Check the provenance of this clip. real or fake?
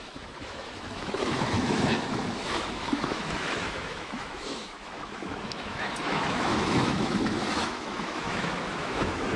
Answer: fake